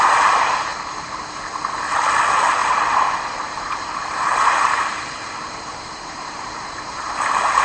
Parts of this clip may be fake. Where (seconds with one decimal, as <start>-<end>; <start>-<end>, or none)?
2.6-7.1